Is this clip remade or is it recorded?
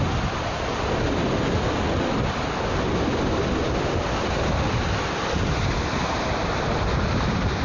recorded